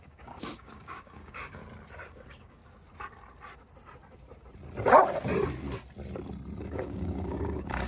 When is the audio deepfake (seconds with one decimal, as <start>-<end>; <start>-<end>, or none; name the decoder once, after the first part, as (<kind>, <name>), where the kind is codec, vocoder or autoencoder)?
0.0-1.6 (codec, DAC); 2.1-2.6; 6.6-7.9